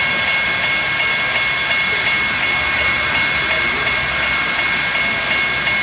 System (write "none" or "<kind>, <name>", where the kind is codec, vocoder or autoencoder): none